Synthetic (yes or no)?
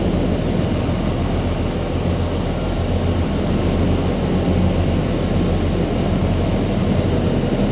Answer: no